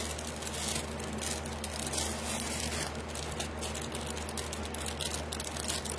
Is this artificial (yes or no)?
no